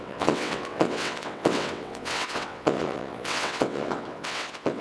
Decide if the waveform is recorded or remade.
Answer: remade